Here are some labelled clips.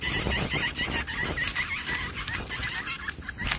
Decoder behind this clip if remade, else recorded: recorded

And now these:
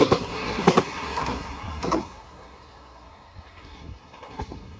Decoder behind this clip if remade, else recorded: remade, codec, SNAC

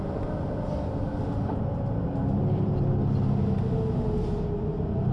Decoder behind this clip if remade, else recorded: recorded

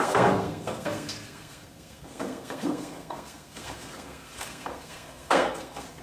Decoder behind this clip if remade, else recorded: remade, codec, SNAC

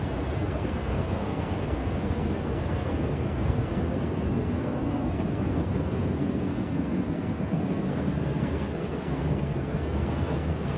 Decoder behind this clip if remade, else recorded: remade, codec, SNAC